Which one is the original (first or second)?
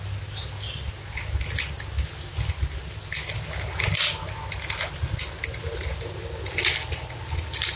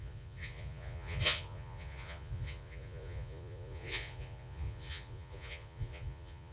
first